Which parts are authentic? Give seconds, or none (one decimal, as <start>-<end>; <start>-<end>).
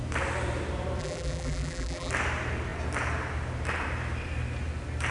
0.0-1.0; 2.1-5.1